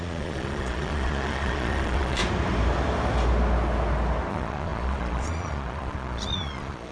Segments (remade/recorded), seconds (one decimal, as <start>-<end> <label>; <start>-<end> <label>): 0.0-2.2 remade; 2.2-4.3 recorded; 4.3-6.9 remade